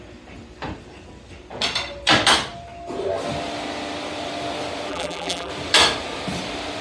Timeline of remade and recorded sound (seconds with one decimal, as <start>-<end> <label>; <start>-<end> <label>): 0.0-4.9 recorded; 4.9-5.5 remade; 5.5-6.8 recorded